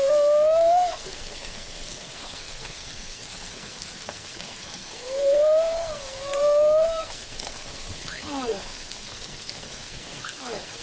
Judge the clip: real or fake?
fake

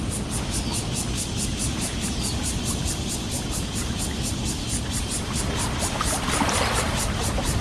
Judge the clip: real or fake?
real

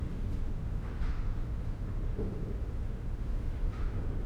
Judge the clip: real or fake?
fake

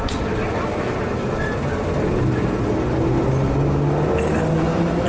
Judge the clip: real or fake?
real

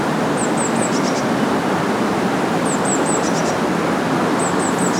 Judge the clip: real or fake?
real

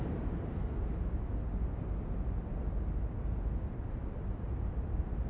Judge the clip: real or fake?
real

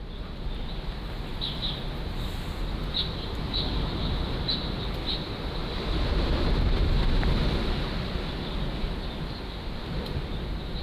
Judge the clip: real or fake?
real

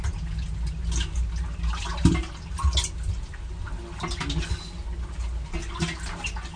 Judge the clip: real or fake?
real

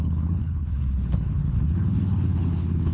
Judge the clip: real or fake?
fake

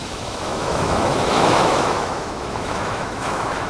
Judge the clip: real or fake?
fake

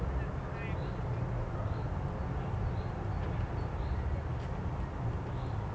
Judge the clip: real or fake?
real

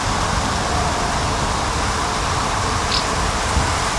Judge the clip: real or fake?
real